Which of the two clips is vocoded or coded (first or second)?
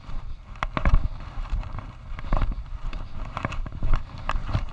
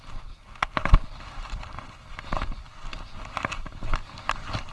first